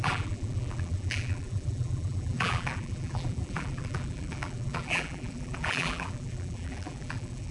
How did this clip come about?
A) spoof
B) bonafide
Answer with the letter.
A